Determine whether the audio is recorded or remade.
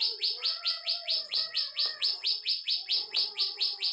remade